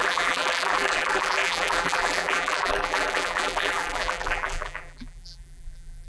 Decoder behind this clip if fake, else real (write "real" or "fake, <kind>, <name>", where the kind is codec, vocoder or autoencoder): fake, vocoder, BigVGAN v2